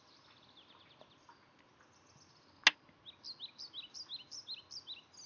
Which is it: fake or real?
real